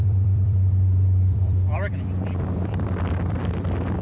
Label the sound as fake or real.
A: fake